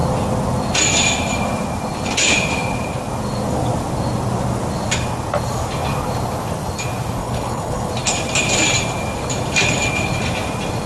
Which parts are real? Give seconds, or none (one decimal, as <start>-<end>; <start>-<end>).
0.0-7.2; 7.9-10.9